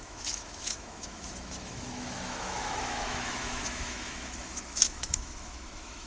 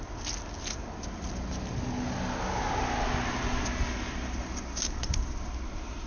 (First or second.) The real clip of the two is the second